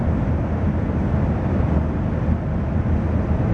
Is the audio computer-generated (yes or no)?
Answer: yes